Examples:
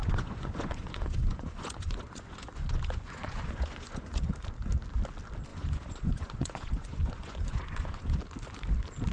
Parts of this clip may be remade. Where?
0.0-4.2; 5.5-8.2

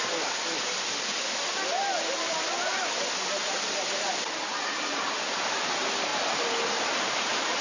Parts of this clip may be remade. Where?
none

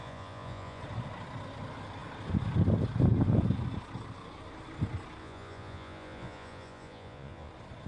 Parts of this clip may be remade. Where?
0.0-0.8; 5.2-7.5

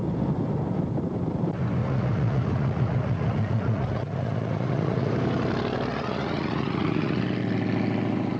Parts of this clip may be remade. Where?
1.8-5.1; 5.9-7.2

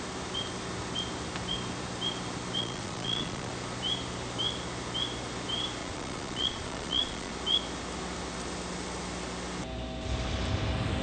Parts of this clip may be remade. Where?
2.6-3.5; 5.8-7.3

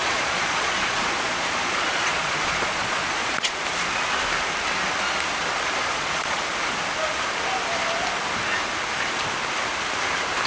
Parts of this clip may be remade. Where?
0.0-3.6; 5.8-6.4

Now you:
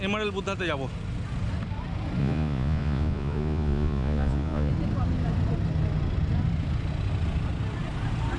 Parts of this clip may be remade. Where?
2.2-4.7